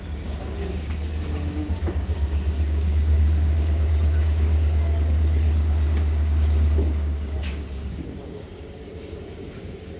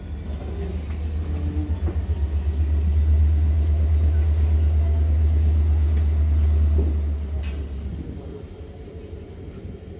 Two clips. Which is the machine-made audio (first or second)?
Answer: first